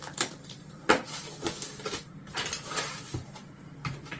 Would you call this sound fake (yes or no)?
no